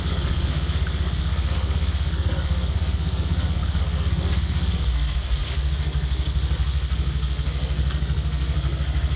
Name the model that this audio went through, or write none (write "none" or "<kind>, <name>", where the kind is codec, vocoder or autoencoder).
codec, SNAC